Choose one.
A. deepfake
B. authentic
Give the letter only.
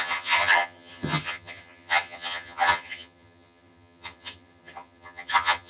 A